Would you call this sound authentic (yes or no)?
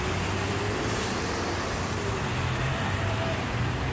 yes